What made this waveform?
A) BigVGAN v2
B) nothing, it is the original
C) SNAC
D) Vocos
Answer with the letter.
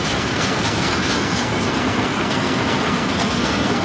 C